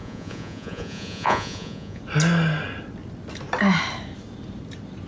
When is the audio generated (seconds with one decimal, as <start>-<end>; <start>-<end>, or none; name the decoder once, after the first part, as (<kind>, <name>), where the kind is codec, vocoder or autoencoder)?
0.0-2.0 (vocoder, Vocos)